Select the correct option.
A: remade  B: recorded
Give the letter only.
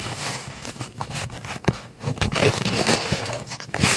A